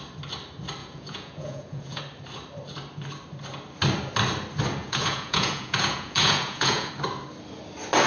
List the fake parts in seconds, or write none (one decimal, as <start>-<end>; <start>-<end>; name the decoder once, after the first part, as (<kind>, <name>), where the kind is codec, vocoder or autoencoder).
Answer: 0.8-2.0 (vocoder, Vocos); 4.8-6.9